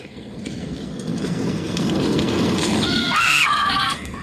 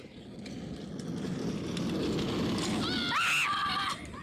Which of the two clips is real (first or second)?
second